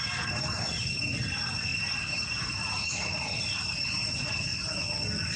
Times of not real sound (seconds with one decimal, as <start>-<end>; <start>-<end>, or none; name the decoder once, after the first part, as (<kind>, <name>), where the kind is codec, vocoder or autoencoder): 0.0-4.5 (vocoder, BigVGAN v2)